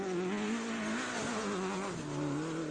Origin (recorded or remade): recorded